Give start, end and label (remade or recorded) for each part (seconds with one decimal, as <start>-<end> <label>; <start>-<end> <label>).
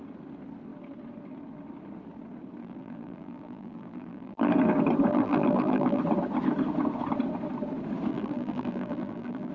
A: 0.0-2.6 recorded; 2.6-4.5 remade; 4.5-5.1 recorded; 5.1-6.0 remade; 6.0-8.1 recorded; 8.1-9.5 remade